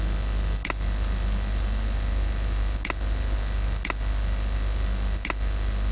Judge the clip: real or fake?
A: real